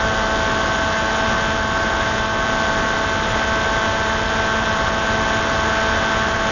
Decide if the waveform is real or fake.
real